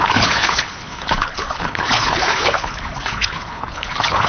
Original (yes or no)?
no